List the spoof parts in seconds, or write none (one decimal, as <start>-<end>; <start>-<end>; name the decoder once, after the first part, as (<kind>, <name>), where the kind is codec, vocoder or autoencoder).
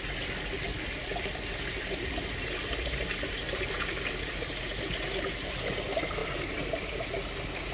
none